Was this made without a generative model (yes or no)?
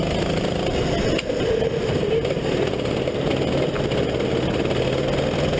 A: yes